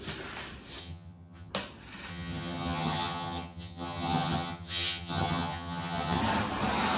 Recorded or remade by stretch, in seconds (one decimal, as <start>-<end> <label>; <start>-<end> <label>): 0.0-0.8 recorded; 0.8-1.5 remade; 1.5-2.1 recorded; 2.1-6.2 remade; 6.2-7.0 recorded